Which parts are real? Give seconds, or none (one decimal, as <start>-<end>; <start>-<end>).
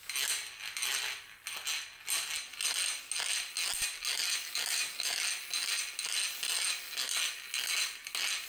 0.0-8.5